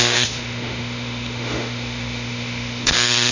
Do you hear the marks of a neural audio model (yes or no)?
yes